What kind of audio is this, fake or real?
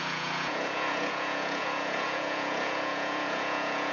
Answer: fake